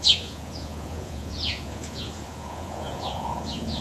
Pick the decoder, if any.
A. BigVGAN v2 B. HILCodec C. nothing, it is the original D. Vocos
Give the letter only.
D